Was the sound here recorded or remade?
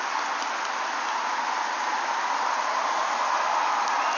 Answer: recorded